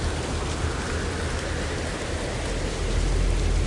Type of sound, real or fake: real